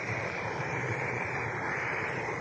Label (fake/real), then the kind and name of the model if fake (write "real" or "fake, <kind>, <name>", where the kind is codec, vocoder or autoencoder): fake, vocoder, BigVGAN v2